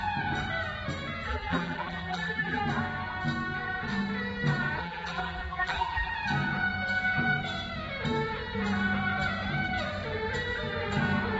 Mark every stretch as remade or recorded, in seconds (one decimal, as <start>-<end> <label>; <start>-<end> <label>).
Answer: 0.0-1.3 recorded; 1.3-2.6 remade; 2.6-4.8 recorded; 4.8-6.1 remade; 6.1-11.4 recorded